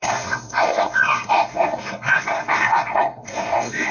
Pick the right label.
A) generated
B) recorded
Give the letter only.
A